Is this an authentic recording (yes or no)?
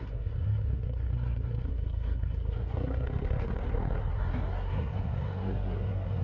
no